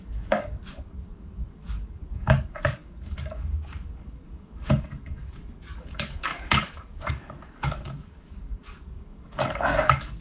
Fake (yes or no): yes